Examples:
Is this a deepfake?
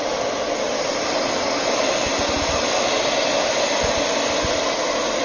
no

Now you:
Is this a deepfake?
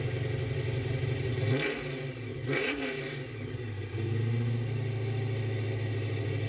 no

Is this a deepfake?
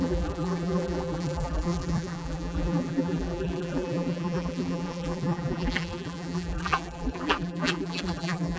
yes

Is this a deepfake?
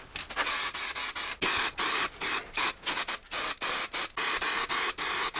no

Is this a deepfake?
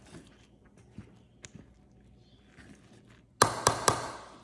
no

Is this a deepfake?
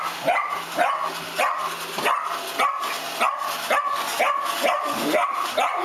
no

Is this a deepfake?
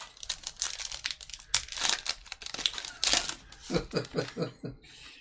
no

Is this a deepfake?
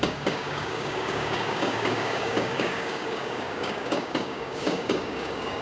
yes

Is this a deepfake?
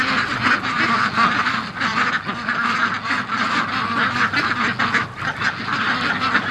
no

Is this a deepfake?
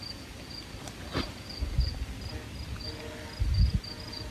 no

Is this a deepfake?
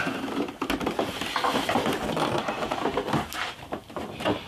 no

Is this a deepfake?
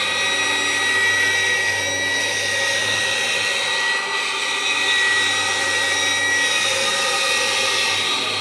no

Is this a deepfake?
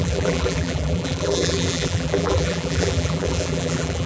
yes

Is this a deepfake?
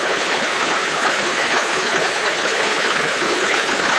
yes